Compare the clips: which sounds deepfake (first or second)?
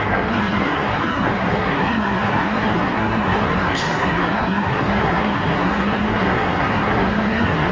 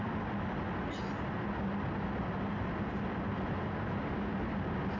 first